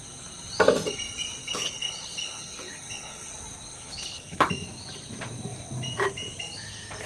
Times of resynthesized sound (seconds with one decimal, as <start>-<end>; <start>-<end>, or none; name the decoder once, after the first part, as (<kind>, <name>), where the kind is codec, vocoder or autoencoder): 1.4-3.3 (codec, HILCodec); 3.7-4.5